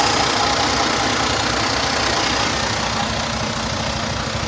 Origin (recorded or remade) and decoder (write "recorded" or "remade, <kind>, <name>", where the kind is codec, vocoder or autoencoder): recorded